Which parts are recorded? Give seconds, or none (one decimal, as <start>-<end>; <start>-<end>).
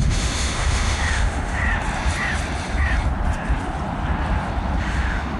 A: 1.6-4.8